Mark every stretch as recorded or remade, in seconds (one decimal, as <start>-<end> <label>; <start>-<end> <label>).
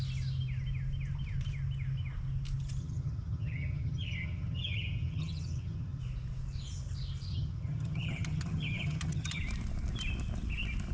0.0-2.8 recorded; 2.8-6.0 remade; 6.0-7.3 recorded; 7.3-9.4 remade; 9.4-10.9 recorded